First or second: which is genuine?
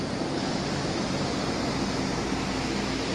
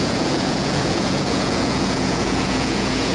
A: first